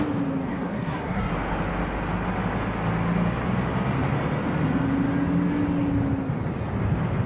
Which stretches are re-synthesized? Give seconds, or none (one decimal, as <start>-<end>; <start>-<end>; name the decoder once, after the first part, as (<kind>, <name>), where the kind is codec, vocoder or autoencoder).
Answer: 0.5-1.3 (codec, SNAC)